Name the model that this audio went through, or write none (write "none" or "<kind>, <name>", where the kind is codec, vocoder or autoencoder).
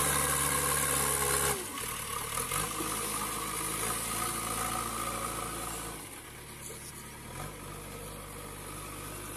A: none